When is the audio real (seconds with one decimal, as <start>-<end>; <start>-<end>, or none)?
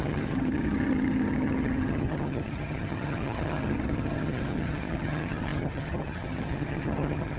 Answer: none